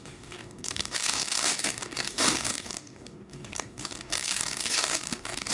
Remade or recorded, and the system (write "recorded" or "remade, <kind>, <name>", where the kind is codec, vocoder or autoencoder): remade, codec, DAC